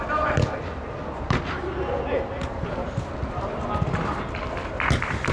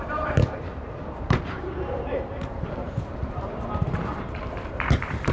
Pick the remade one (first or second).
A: second